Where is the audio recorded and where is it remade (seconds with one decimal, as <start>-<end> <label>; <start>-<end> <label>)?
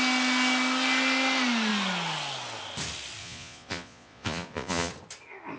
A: 0.0-3.2 recorded; 3.2-4.9 remade; 4.9-5.6 recorded